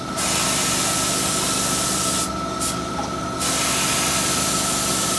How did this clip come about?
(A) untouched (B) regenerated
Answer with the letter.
A